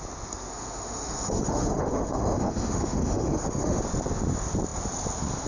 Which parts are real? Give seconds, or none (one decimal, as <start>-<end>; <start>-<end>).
0.0-0.5; 3.8-5.5